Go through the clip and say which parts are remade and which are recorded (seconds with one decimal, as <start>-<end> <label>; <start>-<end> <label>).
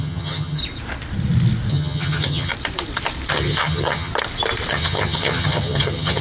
0.0-0.6 remade; 0.6-1.7 recorded; 1.7-2.5 remade; 2.5-3.3 recorded; 3.3-4.1 remade; 4.1-4.7 recorded; 4.7-6.2 remade